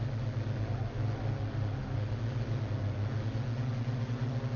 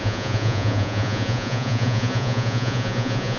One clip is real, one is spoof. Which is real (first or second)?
first